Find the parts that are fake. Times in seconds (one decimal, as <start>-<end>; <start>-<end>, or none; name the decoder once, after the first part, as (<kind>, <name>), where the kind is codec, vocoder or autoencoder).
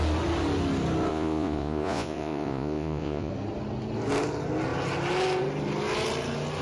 1.1-3.3 (vocoder, Vocos)